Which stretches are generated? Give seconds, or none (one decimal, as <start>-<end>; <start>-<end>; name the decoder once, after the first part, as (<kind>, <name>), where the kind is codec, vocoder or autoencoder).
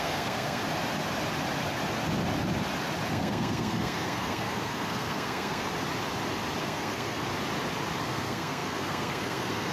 0.0-0.6 (codec, SNAC); 3.1-5.7; 6.6-7.3; 8.0-9.7